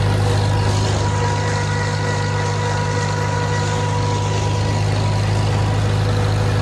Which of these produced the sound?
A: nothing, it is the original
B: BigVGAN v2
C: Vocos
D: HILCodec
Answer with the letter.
A